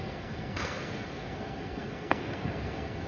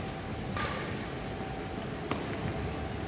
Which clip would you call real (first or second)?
second